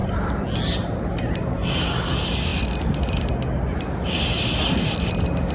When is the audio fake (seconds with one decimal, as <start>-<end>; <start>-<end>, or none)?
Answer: none